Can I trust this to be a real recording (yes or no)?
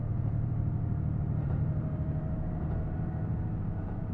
no